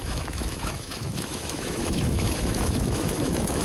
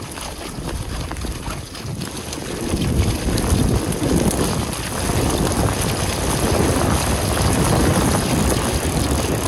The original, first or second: second